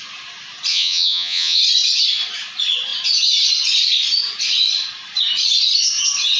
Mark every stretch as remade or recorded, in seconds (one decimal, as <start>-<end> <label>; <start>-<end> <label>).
0.0-0.7 recorded; 0.7-1.6 remade; 1.6-6.4 recorded